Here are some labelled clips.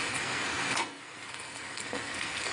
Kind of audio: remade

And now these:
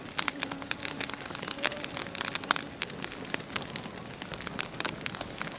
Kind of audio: recorded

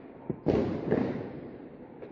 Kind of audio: remade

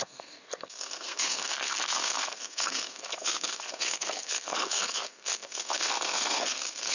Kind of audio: remade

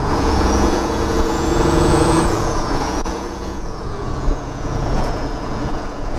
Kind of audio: remade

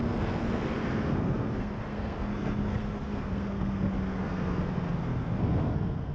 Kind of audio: remade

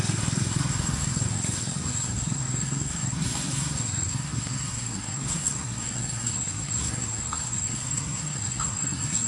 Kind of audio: remade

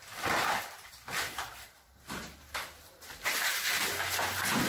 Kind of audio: remade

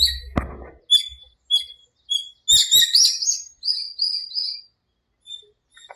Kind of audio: recorded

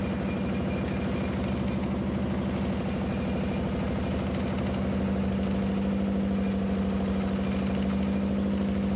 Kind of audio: recorded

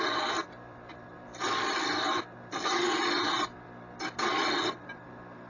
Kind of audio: recorded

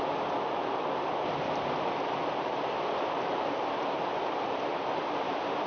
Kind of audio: recorded